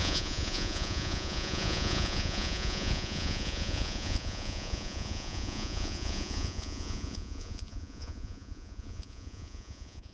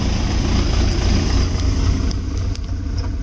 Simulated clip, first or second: first